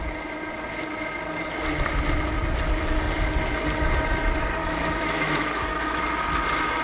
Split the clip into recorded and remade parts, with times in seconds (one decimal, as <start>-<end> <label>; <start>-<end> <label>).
0.0-4.6 recorded; 4.6-6.0 remade; 6.0-6.8 recorded

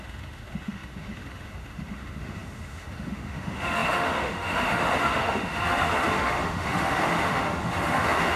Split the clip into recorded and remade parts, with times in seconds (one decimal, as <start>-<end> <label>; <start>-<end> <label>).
0.0-8.4 remade

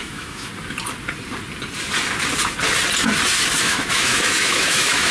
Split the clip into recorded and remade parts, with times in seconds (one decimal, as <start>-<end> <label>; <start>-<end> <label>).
0.0-0.5 remade; 0.5-3.6 recorded; 3.6-5.1 remade

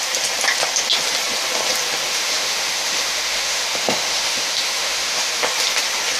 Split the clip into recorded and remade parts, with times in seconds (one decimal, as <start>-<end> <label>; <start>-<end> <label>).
0.0-2.1 recorded; 2.1-5.4 remade; 5.4-6.2 recorded

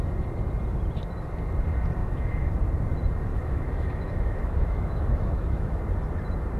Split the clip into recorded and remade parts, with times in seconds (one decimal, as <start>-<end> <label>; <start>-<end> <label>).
0.0-2.0 recorded; 2.0-2.5 remade; 2.5-3.3 recorded; 3.3-5.8 remade; 5.8-6.6 recorded

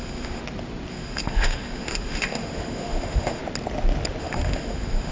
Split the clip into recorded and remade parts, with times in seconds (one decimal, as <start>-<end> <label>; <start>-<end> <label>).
0.0-0.4 remade; 0.4-0.9 recorded; 0.9-3.4 remade; 3.4-4.2 recorded; 4.2-5.1 remade

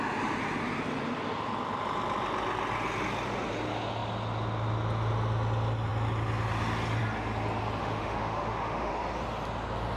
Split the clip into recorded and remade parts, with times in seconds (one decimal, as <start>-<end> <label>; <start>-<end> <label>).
0.0-7.8 recorded; 7.8-8.9 remade; 8.9-10.0 recorded